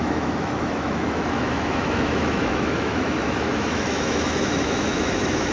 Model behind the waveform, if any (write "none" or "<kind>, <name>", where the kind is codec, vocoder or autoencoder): autoencoder, DAC-VAE